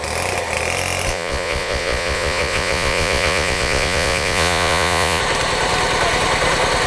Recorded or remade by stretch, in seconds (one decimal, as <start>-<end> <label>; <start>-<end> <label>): 0.0-1.1 recorded; 1.1-5.2 remade; 5.2-6.9 recorded